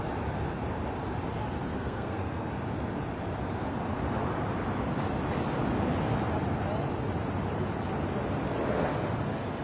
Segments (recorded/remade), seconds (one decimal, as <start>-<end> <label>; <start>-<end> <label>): 0.0-1.7 recorded; 1.7-2.5 remade; 2.5-9.6 recorded